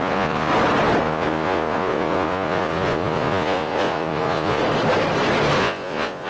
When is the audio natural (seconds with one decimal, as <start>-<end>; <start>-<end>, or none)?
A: 0.5-1.0; 4.6-5.6